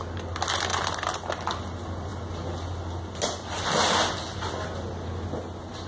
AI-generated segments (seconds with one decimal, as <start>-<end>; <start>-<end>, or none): none